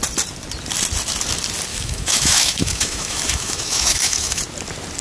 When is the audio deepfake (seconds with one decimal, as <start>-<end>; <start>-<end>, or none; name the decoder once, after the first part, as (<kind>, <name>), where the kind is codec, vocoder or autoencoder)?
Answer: 1.7-4.4 (autoencoder, DAC-VAE)